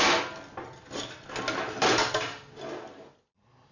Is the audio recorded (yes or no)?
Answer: yes